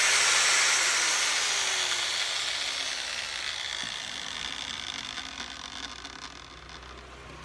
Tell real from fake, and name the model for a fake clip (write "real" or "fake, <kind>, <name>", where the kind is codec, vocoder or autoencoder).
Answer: real